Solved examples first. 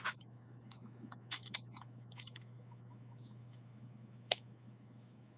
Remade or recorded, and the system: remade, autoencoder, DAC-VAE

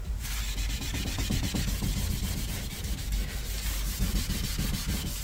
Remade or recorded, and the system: recorded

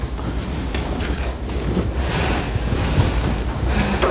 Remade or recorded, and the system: recorded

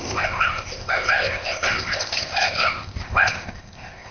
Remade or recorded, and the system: remade, codec, ZipCodec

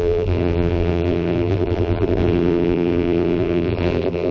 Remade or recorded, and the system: remade, vocoder, BigVGAN v2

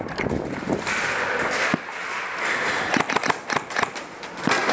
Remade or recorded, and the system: remade, vocoder, BigVGAN v2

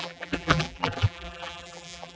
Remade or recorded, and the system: remade, vocoder, BigVGAN v2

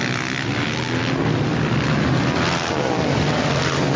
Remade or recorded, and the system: recorded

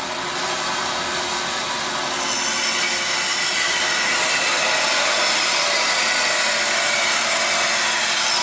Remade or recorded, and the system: recorded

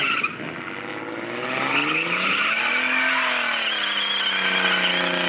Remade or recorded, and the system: recorded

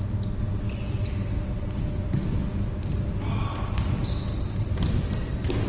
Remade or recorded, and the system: recorded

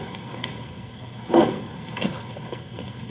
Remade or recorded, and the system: remade, codec, SNAC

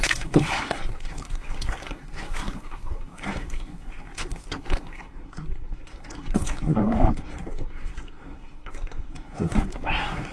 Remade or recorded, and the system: remade, codec, SNAC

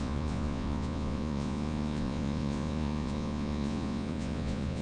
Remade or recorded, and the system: remade, vocoder, Vocos